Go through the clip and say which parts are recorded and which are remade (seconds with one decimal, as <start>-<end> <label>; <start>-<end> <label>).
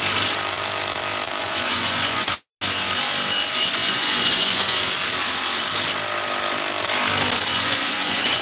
0.0-1.4 recorded; 1.4-2.3 remade; 2.3-3.8 recorded; 3.8-4.8 remade; 4.8-7.5 recorded; 7.5-8.4 remade